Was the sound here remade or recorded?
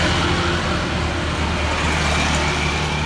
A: recorded